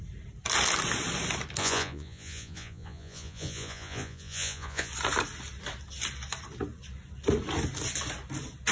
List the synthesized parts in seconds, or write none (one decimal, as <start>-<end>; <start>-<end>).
1.6-4.9